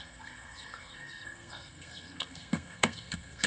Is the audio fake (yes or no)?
yes